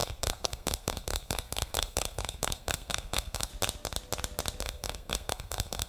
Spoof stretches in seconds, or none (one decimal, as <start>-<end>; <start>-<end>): 0.0-3.5; 4.6-5.9